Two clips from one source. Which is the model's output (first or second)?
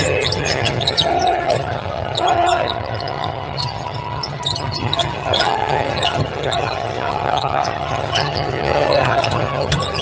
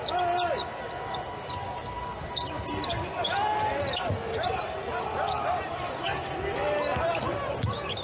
first